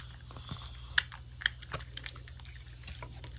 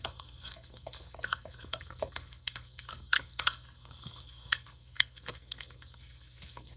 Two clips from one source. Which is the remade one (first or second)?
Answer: second